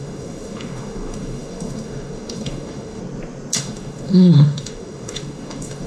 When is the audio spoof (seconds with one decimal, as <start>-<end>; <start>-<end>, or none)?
0.0-3.0; 3.6-5.9